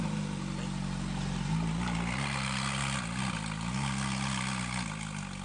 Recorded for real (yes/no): yes